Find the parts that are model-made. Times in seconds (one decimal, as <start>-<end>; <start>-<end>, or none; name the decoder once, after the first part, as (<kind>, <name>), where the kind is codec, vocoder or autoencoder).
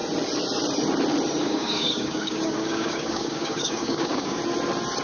1.4-4.4 (codec, DAC)